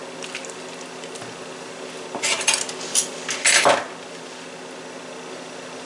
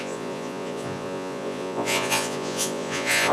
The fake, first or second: second